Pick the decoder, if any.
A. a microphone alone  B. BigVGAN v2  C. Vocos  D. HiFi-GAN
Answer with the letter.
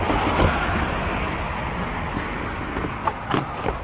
A